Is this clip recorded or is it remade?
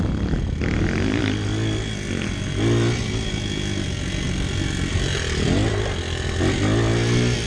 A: recorded